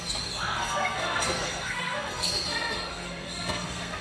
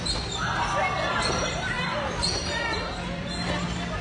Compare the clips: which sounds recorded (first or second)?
second